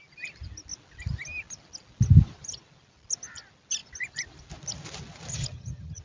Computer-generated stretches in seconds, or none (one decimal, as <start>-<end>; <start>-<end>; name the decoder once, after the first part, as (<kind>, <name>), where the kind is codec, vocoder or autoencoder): 5.3-6.0 (vocoder, HiFi-GAN)